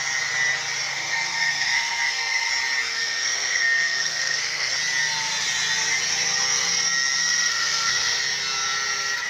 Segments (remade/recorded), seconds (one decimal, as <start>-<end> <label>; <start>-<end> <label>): 0.0-0.9 recorded; 0.9-2.5 remade; 2.5-2.9 recorded; 2.9-4.7 remade; 4.7-7.2 recorded; 7.2-8.2 remade; 8.2-9.3 recorded